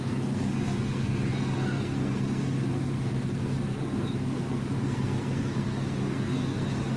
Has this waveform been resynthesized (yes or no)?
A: yes